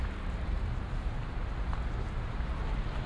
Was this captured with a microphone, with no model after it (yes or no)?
yes